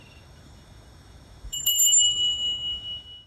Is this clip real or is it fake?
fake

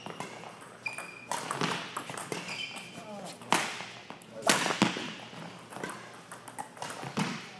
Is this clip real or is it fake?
real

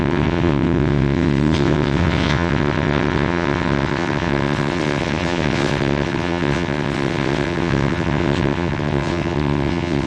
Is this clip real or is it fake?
fake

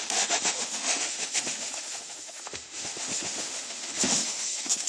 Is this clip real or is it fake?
fake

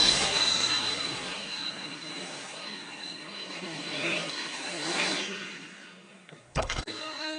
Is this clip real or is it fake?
fake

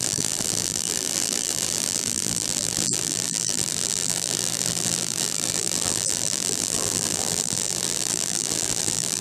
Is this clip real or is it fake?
fake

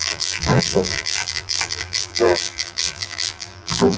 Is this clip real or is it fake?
fake